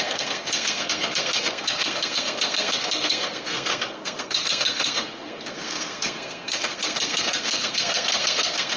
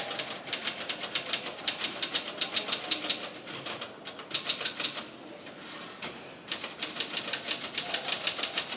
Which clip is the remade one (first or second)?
first